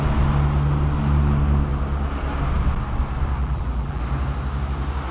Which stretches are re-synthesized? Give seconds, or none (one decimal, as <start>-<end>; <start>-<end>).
3.4-4.0